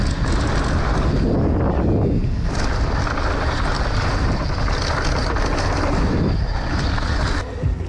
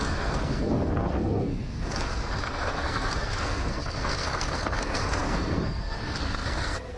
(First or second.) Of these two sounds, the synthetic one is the second